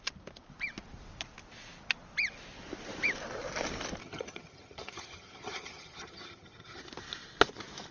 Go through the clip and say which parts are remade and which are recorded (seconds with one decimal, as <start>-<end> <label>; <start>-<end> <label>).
0.0-4.0 recorded; 4.0-6.8 remade; 6.8-7.9 recorded